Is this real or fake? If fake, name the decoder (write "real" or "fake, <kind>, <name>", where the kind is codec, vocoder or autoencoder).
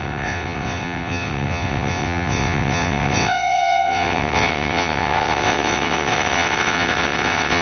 fake, vocoder, WaveNeXt